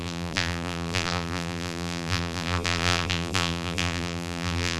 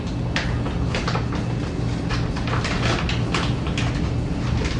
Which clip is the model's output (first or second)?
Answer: first